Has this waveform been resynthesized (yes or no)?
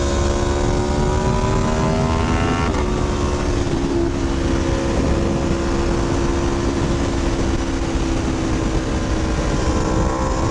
no